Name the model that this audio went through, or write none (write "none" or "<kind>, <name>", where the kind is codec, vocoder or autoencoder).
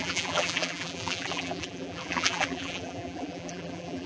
vocoder, BigVGAN v2